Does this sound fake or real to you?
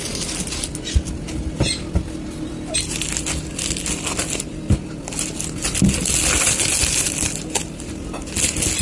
real